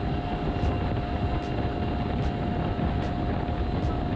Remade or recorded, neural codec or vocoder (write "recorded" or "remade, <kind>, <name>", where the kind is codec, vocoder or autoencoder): recorded